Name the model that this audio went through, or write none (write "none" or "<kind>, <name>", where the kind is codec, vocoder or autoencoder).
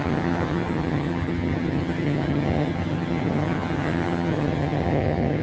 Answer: vocoder, HiFi-GAN